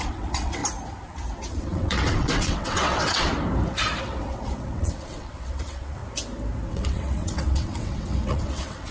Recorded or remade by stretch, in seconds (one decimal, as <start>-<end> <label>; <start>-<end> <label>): 0.0-0.6 remade; 0.6-1.5 recorded; 1.5-3.3 remade; 3.3-4.0 recorded; 4.0-6.0 remade; 6.0-6.7 recorded; 6.7-8.9 remade